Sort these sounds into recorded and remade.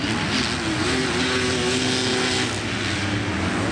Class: recorded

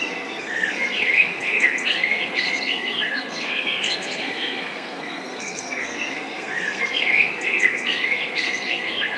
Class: remade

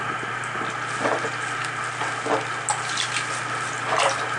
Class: recorded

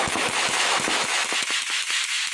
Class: remade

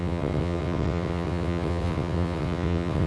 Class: remade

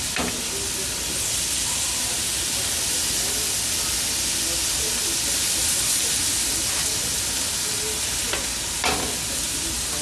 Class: recorded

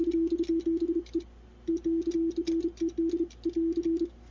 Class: recorded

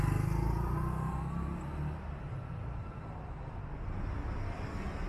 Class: recorded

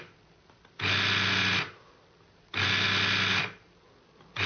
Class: recorded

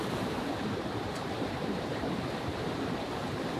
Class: remade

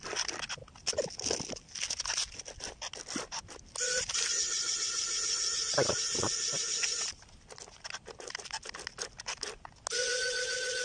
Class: recorded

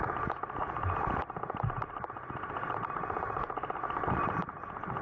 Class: recorded